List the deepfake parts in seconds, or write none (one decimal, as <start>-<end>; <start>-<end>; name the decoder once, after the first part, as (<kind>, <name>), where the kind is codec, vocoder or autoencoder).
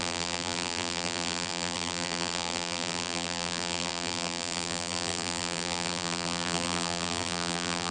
0.0-7.9 (vocoder, BigVGAN v2)